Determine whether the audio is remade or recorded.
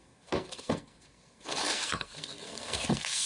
remade